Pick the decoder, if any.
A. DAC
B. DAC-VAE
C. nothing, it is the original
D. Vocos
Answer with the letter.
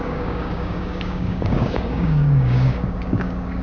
A